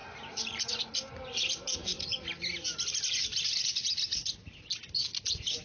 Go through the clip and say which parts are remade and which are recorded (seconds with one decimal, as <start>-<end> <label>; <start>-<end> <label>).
0.0-0.8 remade; 0.8-5.6 recorded